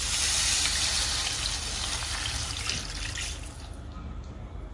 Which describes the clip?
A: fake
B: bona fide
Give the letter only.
B